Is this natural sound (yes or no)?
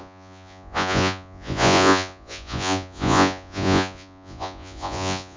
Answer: no